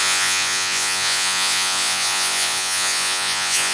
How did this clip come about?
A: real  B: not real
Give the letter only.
B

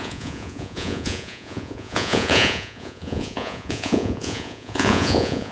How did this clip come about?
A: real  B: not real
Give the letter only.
B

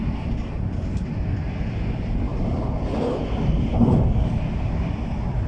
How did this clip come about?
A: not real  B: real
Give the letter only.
B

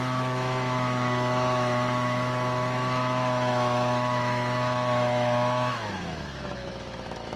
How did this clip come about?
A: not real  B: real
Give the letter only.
A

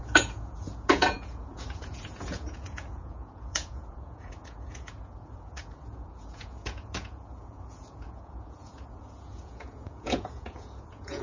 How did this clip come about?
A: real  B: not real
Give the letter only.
B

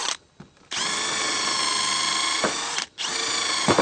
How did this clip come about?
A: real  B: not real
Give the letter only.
A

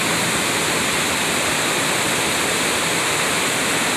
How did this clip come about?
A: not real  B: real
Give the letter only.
B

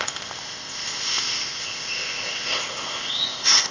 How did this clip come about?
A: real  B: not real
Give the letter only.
B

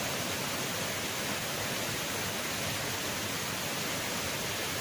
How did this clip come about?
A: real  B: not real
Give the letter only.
A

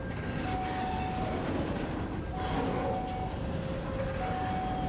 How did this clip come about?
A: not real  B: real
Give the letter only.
B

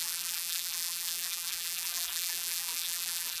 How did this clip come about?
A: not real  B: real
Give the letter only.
A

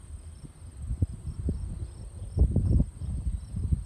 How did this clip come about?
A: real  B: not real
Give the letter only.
A